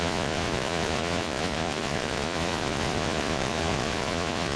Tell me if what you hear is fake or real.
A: fake